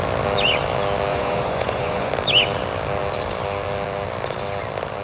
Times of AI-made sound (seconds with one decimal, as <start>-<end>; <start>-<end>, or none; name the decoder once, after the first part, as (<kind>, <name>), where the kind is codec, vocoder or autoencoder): 1.1-2.1 (vocoder, Vocos)